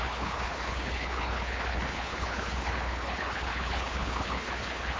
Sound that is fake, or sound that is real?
fake